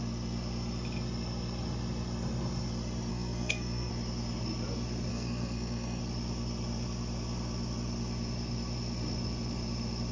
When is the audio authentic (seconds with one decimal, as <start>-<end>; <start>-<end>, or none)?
0.0-3.1; 3.9-5.1; 6.0-10.1